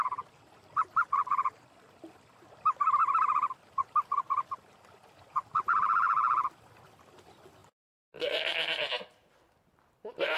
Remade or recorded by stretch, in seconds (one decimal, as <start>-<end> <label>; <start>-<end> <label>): 0.0-7.6 remade; 7.6-9.6 recorded; 9.6-10.4 remade